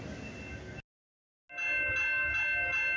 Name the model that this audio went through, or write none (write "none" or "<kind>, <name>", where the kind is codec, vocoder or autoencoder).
none